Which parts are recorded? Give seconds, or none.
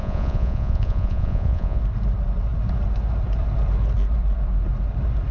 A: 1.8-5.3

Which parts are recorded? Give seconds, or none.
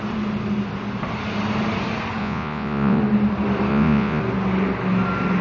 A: 0.0-2.2; 3.0-3.7; 4.2-5.4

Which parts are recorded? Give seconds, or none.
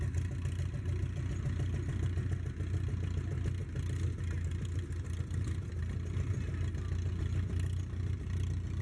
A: 0.0-8.8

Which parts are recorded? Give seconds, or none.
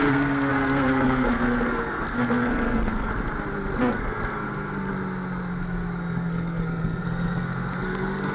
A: 3.1-3.8; 4.9-5.5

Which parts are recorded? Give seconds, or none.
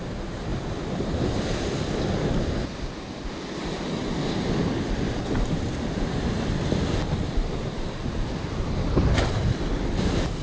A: 0.0-10.4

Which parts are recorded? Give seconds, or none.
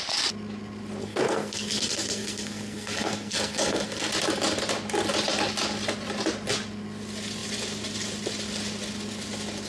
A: 0.0-1.0; 4.1-9.7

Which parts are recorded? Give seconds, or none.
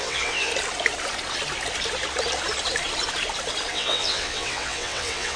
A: 0.5-3.7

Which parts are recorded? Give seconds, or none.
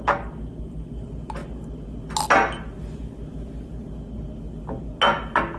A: 0.0-5.6